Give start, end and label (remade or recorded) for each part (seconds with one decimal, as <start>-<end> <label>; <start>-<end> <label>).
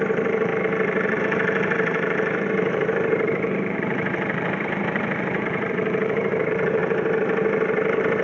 0.0-0.5 remade; 0.5-1.2 recorded; 1.2-6.8 remade; 6.8-8.2 recorded